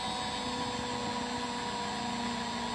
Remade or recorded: recorded